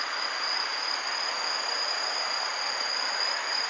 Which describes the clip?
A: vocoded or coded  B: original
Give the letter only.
B